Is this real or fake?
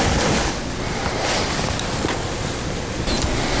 real